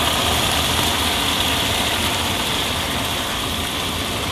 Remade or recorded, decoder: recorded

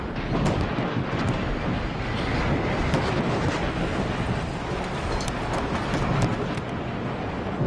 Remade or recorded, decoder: recorded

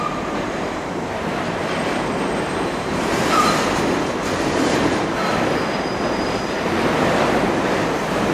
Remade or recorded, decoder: remade, vocoder, BigVGAN v2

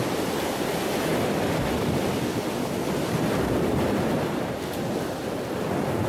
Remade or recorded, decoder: recorded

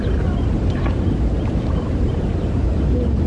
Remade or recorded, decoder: remade, vocoder, BigVGAN v2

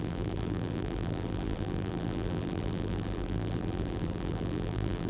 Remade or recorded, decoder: remade, vocoder, BigVGAN v2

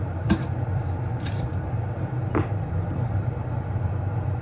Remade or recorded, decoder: remade, vocoder, BigVGAN v2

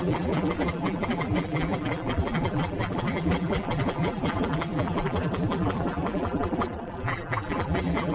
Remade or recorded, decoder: remade, vocoder, BigVGAN v2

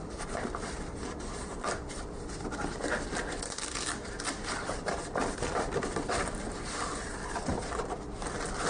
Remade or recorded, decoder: remade, vocoder, BigVGAN v2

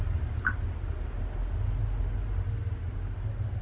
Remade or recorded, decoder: recorded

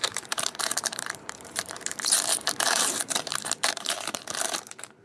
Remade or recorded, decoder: remade, vocoder, BigVGAN v2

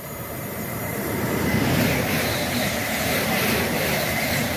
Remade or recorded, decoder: remade, vocoder, BigVGAN v2